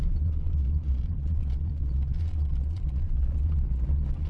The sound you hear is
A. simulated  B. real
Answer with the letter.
A